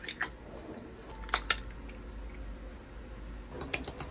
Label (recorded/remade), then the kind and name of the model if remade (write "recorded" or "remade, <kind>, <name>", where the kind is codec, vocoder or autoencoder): recorded